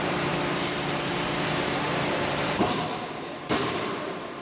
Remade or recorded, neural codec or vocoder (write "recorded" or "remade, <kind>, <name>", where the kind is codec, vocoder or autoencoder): remade, vocoder, BigVGAN v2